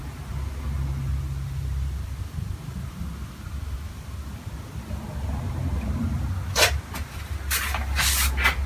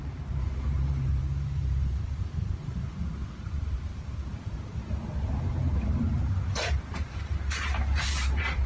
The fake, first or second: second